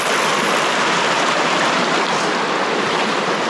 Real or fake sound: real